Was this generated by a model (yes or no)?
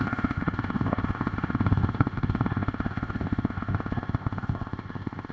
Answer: yes